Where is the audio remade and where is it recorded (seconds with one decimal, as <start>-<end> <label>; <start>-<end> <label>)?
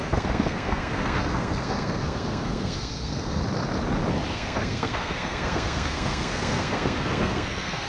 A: 0.0-3.4 remade; 3.4-4.3 recorded; 4.3-7.9 remade